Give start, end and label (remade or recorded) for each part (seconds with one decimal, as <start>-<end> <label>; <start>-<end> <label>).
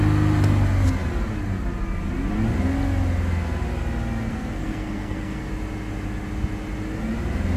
0.0-4.3 recorded; 4.3-5.5 remade; 5.5-7.6 recorded